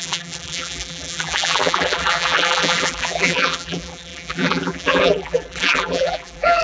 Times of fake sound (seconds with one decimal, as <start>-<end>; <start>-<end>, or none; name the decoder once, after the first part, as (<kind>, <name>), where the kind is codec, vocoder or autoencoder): 0.0-6.6 (vocoder, BigVGAN v2)